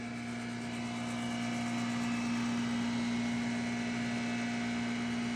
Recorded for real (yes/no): yes